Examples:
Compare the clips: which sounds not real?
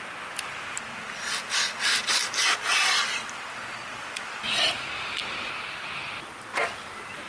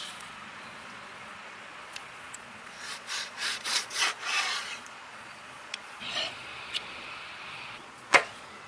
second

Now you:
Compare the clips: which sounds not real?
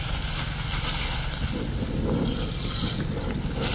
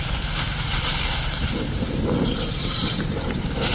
second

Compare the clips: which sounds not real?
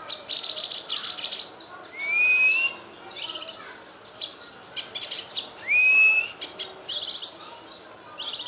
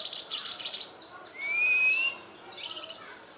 second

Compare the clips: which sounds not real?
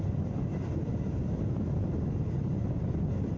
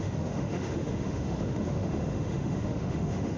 second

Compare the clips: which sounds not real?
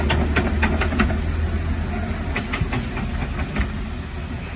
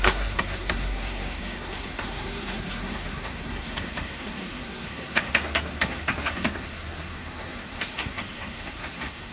second